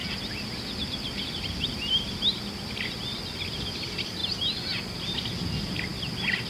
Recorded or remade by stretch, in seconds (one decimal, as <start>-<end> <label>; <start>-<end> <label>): 0.0-6.5 recorded